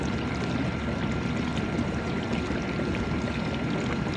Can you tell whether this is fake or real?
real